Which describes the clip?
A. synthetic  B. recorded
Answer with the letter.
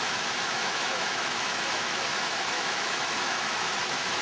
A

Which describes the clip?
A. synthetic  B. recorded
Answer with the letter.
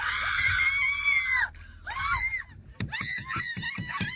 B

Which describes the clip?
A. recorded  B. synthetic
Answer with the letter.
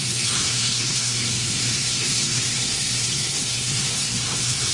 B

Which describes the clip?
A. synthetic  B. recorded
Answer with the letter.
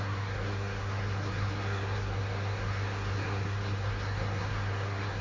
A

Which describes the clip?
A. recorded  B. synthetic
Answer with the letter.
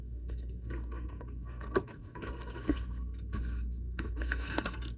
B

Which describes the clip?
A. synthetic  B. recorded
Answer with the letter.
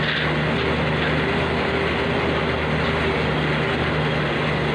B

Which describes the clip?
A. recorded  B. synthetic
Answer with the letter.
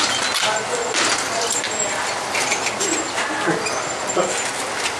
A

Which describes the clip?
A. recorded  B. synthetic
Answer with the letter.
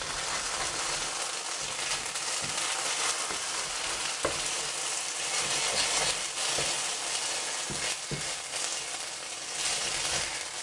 A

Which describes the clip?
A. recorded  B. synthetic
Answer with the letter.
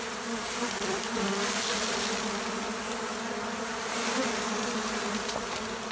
A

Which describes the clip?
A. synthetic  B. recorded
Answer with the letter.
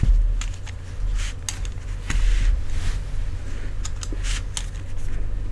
B